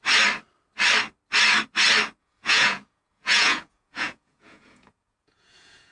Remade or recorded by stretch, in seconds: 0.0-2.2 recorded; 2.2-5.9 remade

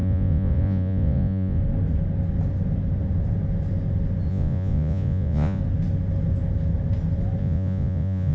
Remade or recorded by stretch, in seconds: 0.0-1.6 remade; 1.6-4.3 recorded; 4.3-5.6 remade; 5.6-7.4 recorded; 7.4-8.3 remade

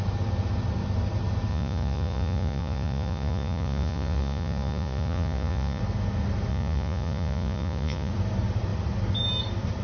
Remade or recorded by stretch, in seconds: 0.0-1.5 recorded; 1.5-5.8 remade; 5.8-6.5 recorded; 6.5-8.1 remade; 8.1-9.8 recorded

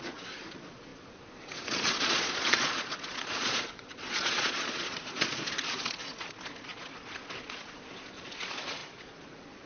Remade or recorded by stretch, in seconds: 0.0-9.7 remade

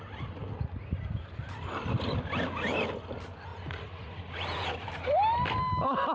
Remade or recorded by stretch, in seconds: 0.0-3.5 recorded; 3.5-4.9 remade; 4.9-6.1 recorded